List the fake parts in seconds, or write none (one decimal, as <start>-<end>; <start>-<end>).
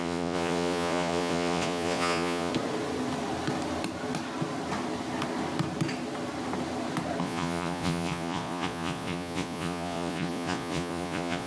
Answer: 0.0-2.5; 7.2-11.5